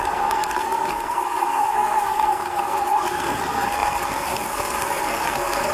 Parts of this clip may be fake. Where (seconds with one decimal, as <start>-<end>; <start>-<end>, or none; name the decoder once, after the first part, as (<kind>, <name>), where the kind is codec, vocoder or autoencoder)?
0.0-5.7 (codec, SNAC)